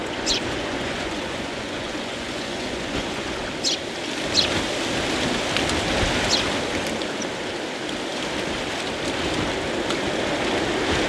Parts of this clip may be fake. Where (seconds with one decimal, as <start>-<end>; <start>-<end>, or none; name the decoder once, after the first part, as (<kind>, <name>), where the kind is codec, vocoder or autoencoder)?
0.0-3.4 (vocoder, Vocos)